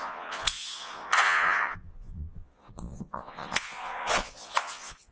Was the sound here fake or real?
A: fake